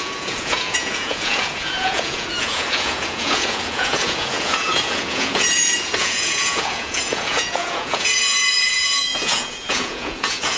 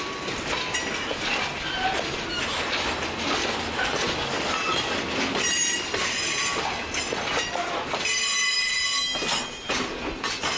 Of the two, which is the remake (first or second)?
first